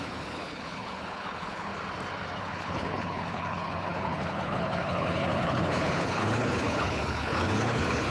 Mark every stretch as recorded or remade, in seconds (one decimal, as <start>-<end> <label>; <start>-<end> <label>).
0.0-1.7 remade; 1.7-2.4 recorded; 2.4-8.1 remade